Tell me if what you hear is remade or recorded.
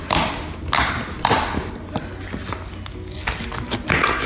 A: recorded